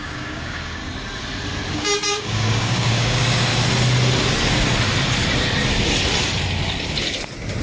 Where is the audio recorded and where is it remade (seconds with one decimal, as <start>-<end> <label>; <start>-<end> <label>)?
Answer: 0.0-0.8 remade; 0.8-1.7 recorded; 1.7-3.5 remade; 3.5-7.6 recorded